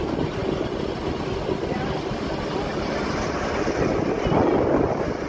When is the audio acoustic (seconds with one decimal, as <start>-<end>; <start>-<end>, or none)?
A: 0.0-5.3

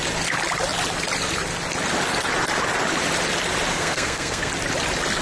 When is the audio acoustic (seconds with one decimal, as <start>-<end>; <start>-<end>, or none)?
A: 0.0-3.7; 4.5-5.2

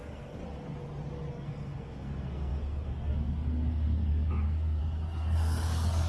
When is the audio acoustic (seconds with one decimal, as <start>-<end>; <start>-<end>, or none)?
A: 0.4-1.3

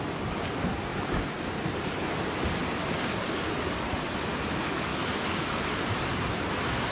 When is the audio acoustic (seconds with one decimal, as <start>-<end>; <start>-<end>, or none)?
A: 0.0-6.9

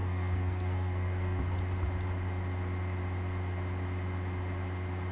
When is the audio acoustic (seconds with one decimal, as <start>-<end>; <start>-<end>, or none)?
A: 1.4-5.1

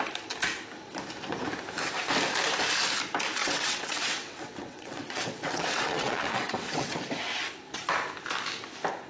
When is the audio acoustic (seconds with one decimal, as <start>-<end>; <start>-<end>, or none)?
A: 0.0-3.4; 7.0-9.1

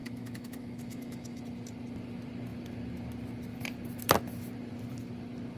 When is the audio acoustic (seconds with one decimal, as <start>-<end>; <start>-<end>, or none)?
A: 1.4-5.6